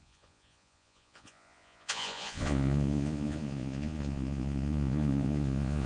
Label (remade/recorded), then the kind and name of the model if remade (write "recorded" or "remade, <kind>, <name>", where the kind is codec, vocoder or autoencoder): remade, vocoder, Vocos